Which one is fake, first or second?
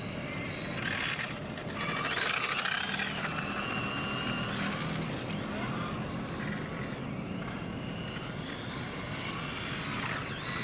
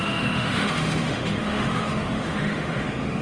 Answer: second